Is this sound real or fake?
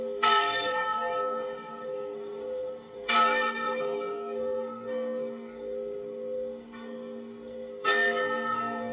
fake